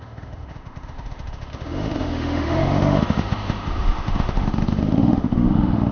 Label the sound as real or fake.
fake